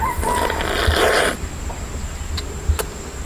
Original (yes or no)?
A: yes